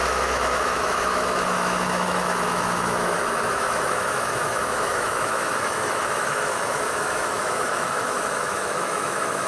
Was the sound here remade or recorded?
remade